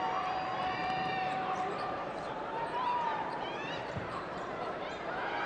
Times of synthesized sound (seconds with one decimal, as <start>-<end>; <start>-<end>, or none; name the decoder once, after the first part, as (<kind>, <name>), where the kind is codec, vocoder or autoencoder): 0.0-5.5 (vocoder, BigVGAN v2)